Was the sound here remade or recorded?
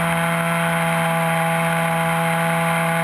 recorded